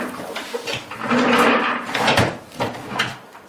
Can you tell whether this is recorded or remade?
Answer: recorded